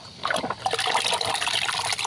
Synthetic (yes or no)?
no